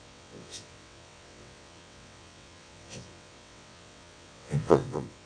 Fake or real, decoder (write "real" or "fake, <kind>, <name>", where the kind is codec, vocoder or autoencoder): fake, vocoder, WaveNeXt